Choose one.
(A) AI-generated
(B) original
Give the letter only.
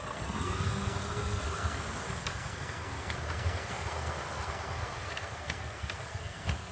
A